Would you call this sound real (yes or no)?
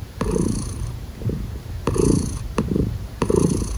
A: no